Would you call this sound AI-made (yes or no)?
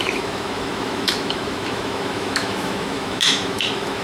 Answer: yes